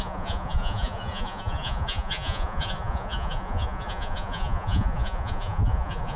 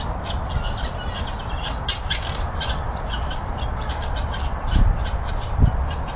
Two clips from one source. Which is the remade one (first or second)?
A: first